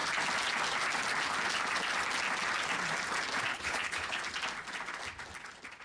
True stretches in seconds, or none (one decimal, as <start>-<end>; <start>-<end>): 0.0-3.5; 4.2-5.8